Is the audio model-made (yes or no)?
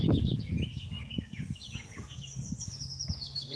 yes